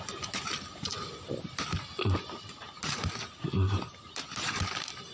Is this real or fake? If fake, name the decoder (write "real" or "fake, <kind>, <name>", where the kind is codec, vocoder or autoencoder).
real